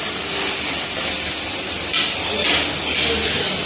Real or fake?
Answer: real